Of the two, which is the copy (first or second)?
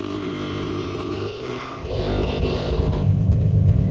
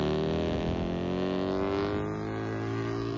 first